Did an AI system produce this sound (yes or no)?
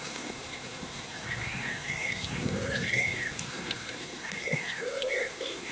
yes